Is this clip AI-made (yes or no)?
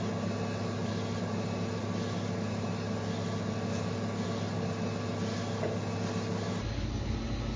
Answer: no